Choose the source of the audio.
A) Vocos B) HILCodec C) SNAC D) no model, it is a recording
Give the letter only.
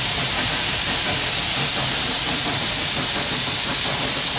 D